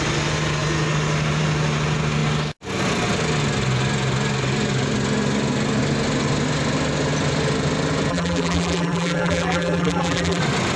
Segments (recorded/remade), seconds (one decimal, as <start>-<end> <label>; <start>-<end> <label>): 0.0-8.1 recorded; 8.1-10.4 remade; 10.4-10.8 recorded